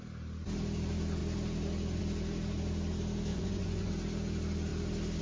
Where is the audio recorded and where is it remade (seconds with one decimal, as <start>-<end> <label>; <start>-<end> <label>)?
0.0-3.3 recorded; 3.3-3.9 remade; 3.9-5.2 recorded